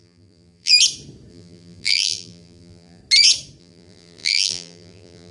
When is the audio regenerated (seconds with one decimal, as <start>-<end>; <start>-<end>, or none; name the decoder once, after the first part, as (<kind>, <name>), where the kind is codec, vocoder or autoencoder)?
0.0-0.7 (vocoder, BigVGAN v2); 1.3-3.0; 3.6-5.3